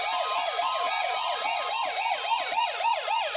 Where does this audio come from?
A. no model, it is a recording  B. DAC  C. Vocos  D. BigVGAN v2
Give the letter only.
C